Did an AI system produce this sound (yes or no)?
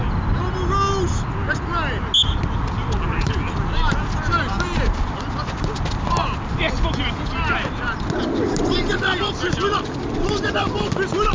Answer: no